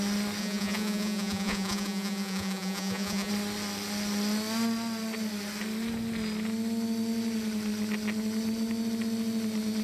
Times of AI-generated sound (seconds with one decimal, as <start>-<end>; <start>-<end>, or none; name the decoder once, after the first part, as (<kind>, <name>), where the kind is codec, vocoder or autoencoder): 0.4-3.3 (vocoder, Vocos)